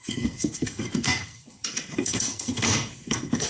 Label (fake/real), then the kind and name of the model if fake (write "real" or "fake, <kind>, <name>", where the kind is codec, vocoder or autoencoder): fake, codec, SNAC